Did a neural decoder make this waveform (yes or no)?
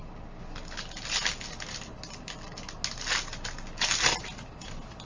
no